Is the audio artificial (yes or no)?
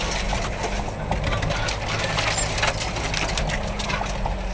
no